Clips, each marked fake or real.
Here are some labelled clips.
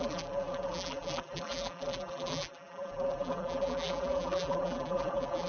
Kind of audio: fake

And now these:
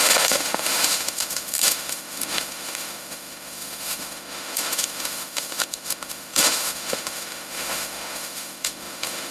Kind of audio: fake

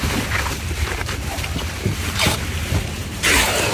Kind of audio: fake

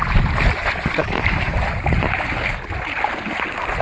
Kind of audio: real